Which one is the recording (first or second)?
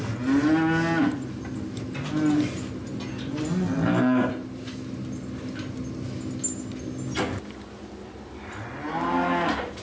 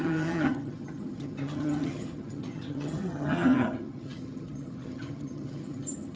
first